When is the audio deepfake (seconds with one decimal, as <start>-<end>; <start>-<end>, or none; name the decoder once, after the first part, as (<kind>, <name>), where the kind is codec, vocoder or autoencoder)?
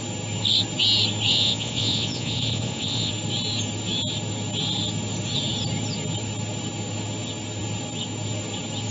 1.3-3.1 (vocoder, Vocos)